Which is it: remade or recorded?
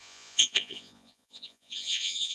remade